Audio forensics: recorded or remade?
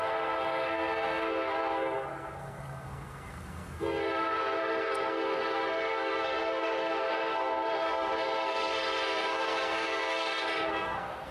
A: remade